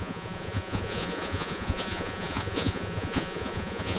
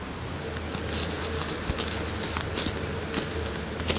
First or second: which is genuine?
second